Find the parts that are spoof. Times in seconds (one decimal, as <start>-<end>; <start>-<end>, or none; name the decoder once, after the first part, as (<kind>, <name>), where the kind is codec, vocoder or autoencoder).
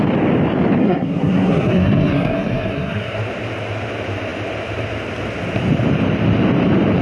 0.8-3.2 (codec, SNAC)